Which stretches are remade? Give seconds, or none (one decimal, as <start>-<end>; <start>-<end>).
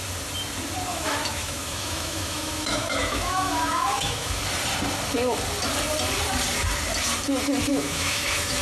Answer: 0.9-4.4; 7.7-8.6